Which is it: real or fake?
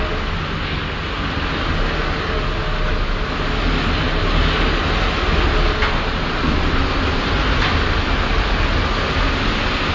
real